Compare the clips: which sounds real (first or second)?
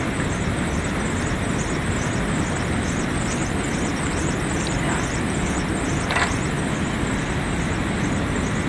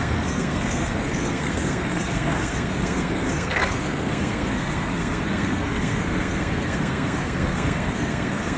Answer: first